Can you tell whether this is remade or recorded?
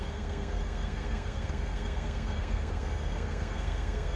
remade